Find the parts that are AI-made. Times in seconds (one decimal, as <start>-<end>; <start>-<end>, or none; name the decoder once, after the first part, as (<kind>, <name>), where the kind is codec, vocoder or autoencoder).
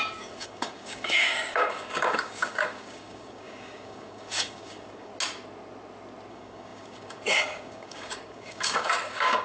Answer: 0.0-5.1 (codec, DAC); 6.3-9.4